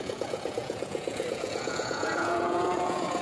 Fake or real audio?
fake